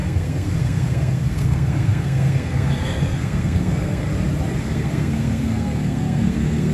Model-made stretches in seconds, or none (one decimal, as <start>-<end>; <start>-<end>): 0.0-4.1; 4.6-6.7